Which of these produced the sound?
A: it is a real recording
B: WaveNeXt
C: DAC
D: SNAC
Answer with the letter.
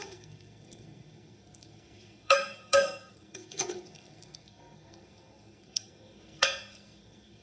D